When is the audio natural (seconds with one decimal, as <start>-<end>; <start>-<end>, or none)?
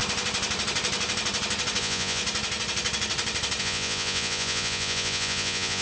0.0-1.8; 2.2-3.6